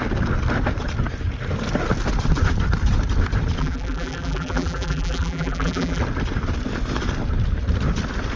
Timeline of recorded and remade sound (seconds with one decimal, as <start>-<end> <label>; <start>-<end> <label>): 0.0-3.6 recorded; 3.6-6.0 remade; 6.0-8.4 recorded